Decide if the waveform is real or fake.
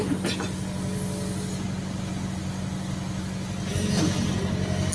real